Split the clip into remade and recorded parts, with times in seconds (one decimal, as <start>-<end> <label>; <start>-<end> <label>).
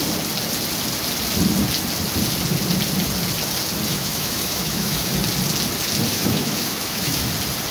0.0-3.9 recorded; 3.9-5.1 remade; 5.1-6.1 recorded; 6.1-7.2 remade; 7.2-7.7 recorded